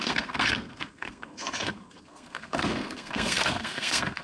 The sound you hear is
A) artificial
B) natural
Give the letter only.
A